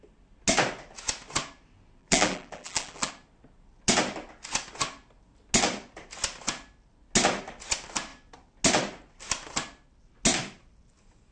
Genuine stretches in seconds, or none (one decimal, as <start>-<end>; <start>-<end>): 0.0-2.0; 3.1-11.3